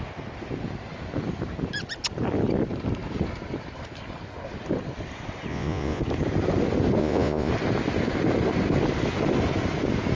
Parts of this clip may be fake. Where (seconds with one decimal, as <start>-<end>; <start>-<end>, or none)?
5.5-6.0; 7.0-7.5